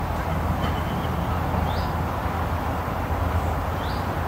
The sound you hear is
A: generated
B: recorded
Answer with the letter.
A